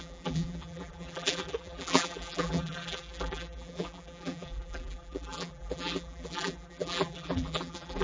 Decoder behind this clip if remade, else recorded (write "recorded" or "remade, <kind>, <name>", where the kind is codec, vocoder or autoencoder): remade, vocoder, BigVGAN v2